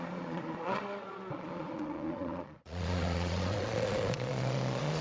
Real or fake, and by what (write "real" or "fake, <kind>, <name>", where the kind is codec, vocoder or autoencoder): fake, vocoder, Vocos